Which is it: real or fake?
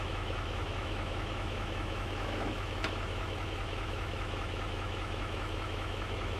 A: fake